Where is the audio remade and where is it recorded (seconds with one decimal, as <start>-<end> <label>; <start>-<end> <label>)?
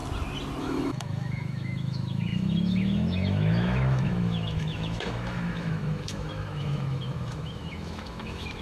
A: 0.0-0.6 recorded; 0.6-8.6 remade